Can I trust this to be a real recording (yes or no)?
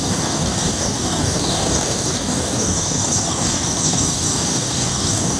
no